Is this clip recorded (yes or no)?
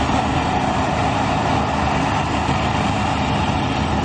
yes